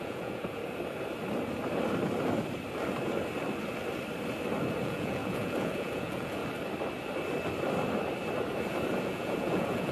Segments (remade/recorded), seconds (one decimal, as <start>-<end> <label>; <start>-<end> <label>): 0.0-0.6 remade; 0.6-4.8 recorded; 4.8-6.4 remade; 6.4-9.0 recorded; 9.0-9.9 remade